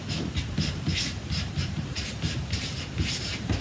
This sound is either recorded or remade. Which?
remade